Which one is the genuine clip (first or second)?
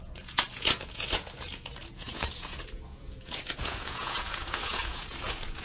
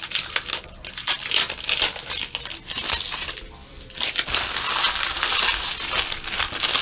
second